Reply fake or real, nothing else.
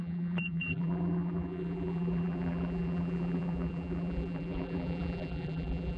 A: fake